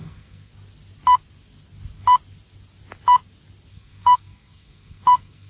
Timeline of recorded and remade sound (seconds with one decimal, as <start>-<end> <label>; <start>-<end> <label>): 0.0-0.5 remade; 0.5-3.7 recorded; 3.7-5.5 remade